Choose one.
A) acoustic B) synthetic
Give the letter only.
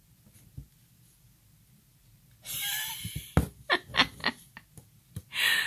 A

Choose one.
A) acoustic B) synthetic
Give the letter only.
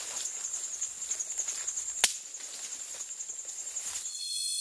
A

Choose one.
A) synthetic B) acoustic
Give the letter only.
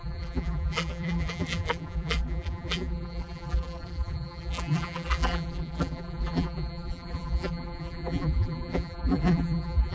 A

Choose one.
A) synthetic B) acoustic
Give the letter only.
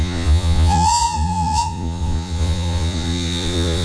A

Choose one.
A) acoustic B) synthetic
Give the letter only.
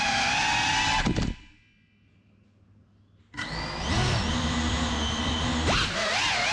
A